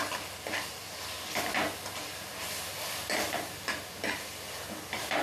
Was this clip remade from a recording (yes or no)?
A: no